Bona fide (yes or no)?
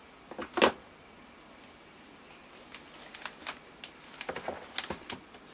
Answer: yes